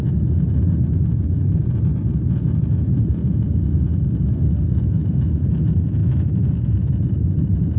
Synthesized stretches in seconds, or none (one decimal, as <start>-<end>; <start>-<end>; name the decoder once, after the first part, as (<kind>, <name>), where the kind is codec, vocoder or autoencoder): 1.2-3.1 (vocoder, BigVGAN v2); 6.0-7.8